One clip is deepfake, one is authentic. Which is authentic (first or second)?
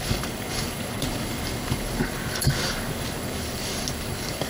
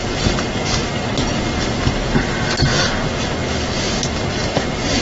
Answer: second